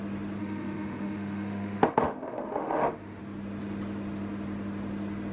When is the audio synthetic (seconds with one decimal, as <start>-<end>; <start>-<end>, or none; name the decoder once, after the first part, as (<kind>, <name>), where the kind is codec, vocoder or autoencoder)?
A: 0.4-3.2 (autoencoder, DAC-VAE)